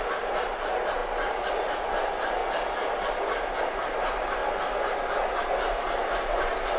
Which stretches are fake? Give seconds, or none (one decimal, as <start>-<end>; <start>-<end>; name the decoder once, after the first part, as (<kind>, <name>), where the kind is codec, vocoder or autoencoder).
0.0-1.0 (vocoder, BigVGAN v2); 1.5-2.4; 3.6-6.8